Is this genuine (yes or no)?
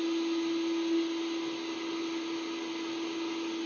yes